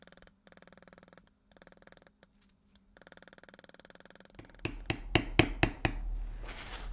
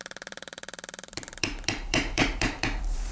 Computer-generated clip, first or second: second